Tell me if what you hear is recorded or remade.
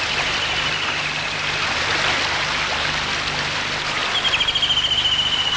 recorded